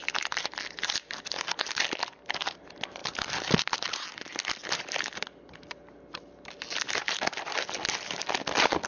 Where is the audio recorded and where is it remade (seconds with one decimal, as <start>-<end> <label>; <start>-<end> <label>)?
0.0-8.9 recorded